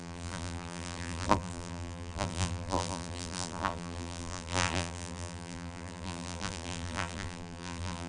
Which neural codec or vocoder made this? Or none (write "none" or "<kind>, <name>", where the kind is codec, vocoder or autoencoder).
vocoder, BigVGAN v2